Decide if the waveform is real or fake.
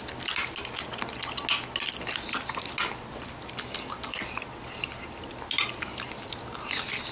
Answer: real